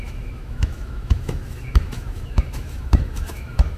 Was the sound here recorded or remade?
remade